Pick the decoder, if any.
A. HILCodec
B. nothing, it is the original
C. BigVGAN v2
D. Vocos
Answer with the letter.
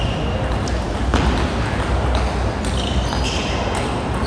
B